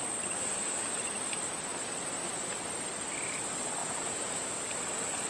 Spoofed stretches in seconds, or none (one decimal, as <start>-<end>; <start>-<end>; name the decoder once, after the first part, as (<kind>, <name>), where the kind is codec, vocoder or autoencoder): 3.8-4.5 (vocoder, Vocos)